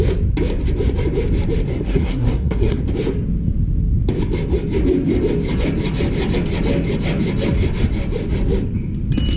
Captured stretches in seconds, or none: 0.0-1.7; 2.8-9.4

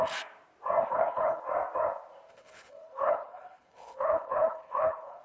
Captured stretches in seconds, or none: 0.0-0.9; 1.4-2.3